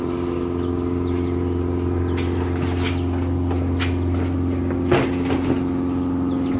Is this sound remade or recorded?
recorded